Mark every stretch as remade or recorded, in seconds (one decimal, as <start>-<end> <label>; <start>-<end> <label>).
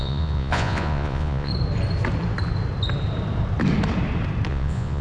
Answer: 0.0-1.5 remade; 1.5-4.5 recorded; 4.5-5.0 remade